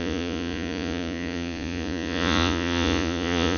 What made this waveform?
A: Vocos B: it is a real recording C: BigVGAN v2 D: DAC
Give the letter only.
A